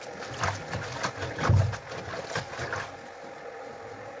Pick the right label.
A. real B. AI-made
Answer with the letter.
A